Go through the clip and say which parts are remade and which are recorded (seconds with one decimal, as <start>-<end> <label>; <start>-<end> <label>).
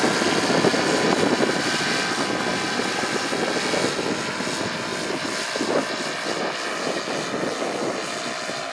0.0-2.5 recorded; 2.5-3.0 remade; 3.0-8.7 recorded